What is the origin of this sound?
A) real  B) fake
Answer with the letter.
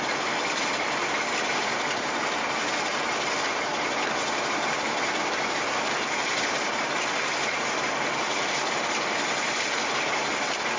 A